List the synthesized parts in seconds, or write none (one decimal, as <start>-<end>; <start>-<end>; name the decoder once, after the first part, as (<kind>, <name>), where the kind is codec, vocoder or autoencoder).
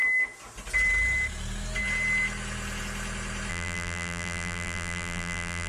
3.5-5.7 (vocoder, BigVGAN v2)